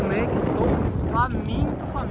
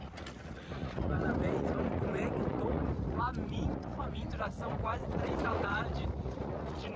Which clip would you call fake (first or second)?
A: second